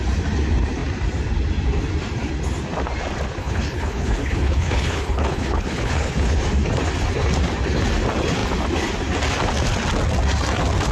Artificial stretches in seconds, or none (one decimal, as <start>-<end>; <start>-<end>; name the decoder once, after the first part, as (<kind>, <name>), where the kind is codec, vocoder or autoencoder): 3.4-6.4 (codec, HILCodec)